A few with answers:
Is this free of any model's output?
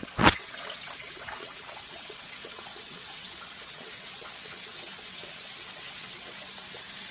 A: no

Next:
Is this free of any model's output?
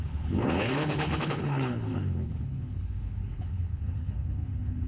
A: no